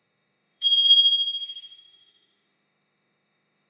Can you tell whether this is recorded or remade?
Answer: remade